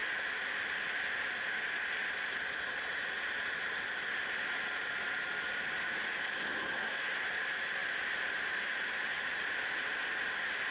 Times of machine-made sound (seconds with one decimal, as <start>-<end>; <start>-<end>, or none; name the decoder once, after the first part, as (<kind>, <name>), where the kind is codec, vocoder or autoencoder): 7.8-8.4 (vocoder, BigVGAN v2)